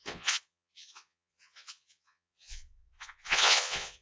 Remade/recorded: remade